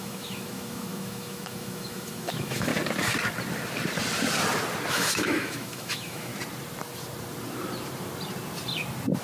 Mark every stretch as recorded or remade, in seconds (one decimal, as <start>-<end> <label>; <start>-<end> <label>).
0.0-2.7 remade; 2.7-4.9 recorded; 4.9-6.3 remade; 6.3-9.2 recorded